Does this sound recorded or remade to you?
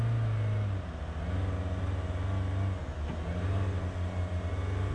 recorded